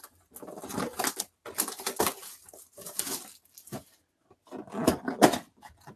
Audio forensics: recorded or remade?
recorded